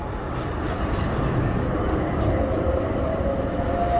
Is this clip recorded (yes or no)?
yes